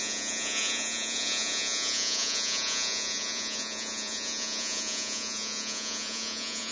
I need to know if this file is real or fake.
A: fake